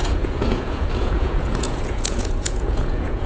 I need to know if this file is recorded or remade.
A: remade